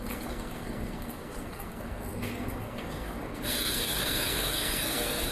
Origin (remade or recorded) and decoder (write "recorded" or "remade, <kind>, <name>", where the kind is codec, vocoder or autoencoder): remade, codec, SNAC